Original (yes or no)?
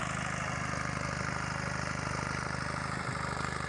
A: yes